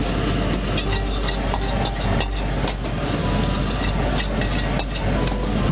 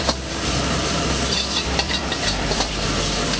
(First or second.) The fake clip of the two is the second